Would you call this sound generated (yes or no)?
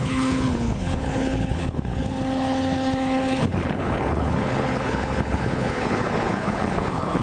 yes